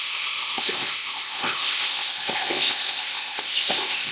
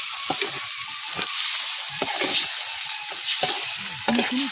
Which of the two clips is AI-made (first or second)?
first